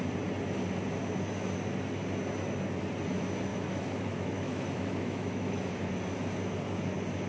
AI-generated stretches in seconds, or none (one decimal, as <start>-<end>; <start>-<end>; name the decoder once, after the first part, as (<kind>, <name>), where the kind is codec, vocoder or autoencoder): 3.5-5.7 (autoencoder, DAC-VAE)